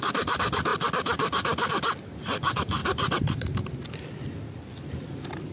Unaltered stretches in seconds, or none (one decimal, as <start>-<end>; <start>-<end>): 0.0-2.8; 4.2-5.5